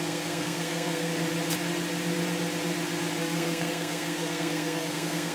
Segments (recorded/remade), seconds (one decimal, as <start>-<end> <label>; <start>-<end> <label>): 0.0-1.1 remade; 1.1-3.2 recorded; 3.2-5.3 remade